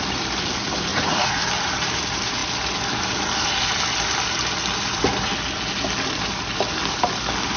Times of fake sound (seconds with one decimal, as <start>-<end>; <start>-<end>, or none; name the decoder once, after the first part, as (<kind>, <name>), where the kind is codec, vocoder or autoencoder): 0.9-1.4 (vocoder, Vocos)